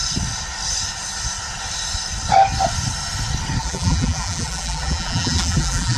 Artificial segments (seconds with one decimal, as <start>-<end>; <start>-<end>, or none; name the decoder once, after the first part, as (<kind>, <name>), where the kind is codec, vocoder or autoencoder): 3.6-6.0 (vocoder, BigVGAN v2)